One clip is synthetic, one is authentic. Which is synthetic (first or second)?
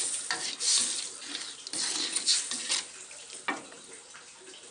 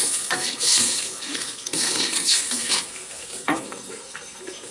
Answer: second